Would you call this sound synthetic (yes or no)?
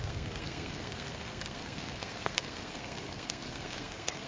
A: yes